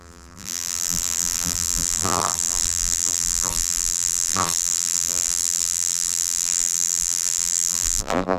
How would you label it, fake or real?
fake